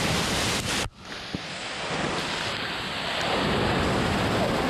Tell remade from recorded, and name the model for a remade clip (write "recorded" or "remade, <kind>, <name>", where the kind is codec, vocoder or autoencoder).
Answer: recorded